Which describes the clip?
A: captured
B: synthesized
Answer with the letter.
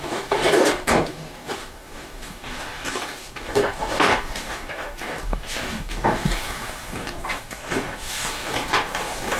B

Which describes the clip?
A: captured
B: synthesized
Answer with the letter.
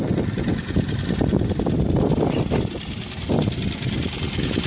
A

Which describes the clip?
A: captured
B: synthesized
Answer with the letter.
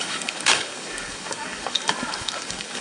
B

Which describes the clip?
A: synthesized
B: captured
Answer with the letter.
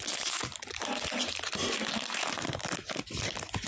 B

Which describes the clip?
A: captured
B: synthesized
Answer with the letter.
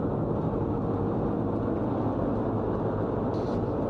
A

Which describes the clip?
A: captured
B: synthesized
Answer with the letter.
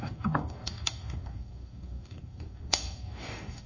B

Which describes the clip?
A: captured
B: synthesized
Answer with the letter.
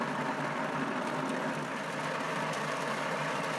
A